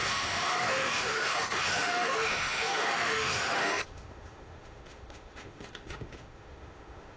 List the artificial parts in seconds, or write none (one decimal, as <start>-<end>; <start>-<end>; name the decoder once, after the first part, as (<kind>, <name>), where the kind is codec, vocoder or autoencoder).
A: 0.0-7.2 (autoencoder, DAC-VAE)